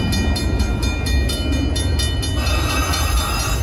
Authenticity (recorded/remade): recorded